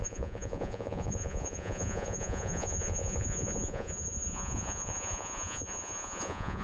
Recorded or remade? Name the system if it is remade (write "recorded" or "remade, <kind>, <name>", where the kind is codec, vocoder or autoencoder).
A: remade, vocoder, Vocos